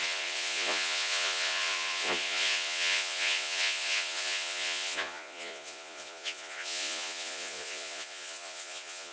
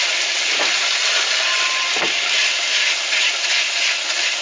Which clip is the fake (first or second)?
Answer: first